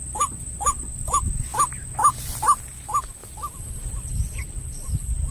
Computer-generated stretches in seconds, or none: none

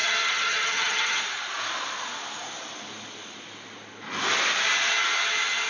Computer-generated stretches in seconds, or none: 0.0-1.2 (vocoder, HiFi-GAN)

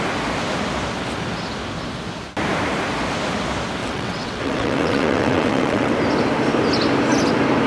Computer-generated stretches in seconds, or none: 3.8-5.9 (vocoder, WaveNeXt)

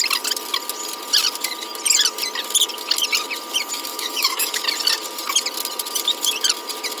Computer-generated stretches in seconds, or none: 3.9-4.6 (autoencoder, DAC-VAE)

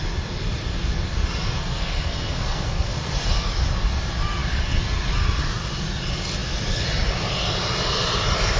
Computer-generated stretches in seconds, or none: 1.6-3.1 (codec, SNAC)

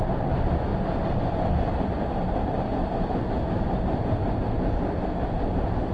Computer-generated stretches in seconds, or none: none